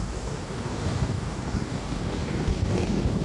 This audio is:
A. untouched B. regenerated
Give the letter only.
B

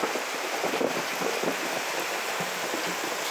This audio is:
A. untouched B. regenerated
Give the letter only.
B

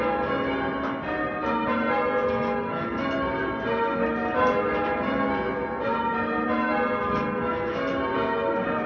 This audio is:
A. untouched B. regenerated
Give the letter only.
A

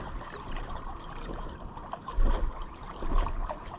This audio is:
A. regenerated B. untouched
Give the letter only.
A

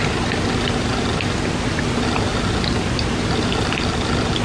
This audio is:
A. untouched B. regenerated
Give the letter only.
A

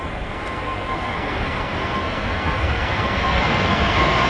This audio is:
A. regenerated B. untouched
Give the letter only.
A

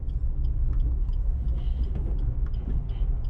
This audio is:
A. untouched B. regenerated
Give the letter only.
A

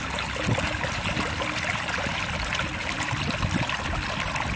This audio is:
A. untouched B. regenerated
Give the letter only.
A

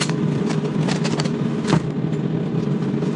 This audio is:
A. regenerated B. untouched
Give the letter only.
B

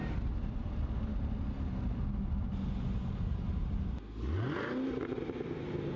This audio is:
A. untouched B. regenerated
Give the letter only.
A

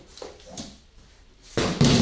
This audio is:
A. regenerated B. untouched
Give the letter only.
B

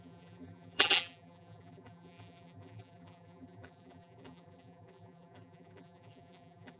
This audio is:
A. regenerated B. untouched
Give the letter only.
A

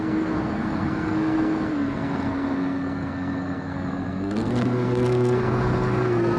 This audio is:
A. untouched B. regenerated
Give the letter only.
B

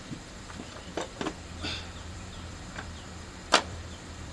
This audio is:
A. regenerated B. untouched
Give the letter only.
A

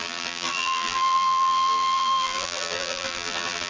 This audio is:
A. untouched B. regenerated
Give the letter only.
B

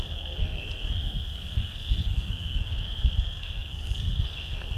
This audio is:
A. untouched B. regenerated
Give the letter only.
B